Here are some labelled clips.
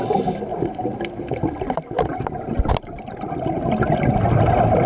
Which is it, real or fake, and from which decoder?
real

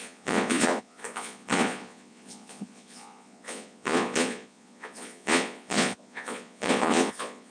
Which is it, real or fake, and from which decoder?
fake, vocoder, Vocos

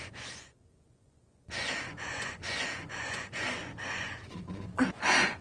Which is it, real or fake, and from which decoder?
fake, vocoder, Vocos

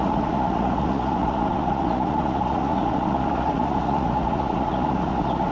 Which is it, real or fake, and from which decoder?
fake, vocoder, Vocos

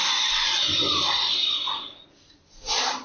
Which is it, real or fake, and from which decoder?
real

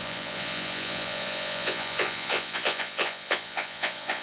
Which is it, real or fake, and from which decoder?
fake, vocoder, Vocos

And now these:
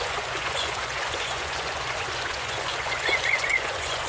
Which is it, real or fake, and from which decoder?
fake, vocoder, Vocos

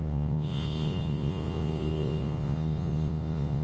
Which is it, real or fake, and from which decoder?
fake, vocoder, Vocos